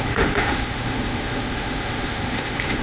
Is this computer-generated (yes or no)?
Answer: yes